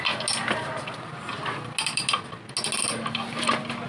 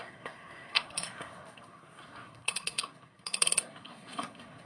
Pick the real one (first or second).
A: first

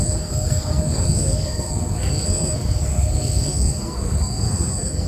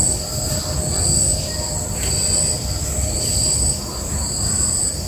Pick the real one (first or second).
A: second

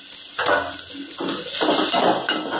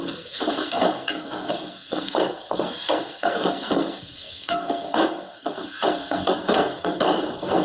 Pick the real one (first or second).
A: first